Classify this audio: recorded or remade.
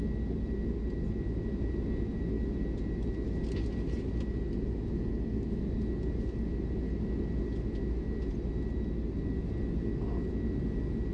recorded